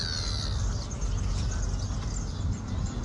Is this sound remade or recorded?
recorded